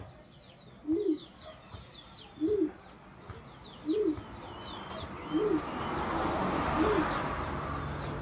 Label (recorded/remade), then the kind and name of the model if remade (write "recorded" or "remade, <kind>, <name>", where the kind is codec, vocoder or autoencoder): recorded